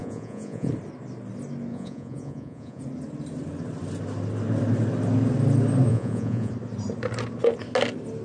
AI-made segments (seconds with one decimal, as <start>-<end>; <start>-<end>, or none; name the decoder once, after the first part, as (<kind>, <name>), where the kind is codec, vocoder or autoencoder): 0.0-0.7 (vocoder, Vocos); 1.7-2.8; 5.9-6.5

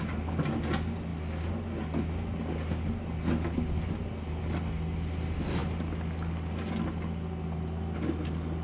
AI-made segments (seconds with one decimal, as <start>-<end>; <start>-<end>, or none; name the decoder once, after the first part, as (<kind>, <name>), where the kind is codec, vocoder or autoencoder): none

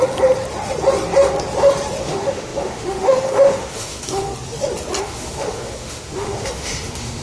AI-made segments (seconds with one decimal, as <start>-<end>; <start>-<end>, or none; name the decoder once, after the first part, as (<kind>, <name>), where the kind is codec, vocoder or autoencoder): 2.0-4.3 (autoencoder, DAC-VAE); 5.0-7.2

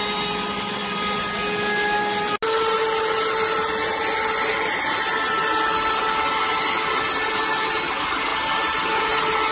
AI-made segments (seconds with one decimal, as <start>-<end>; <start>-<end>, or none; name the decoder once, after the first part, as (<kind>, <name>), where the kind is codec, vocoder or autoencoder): none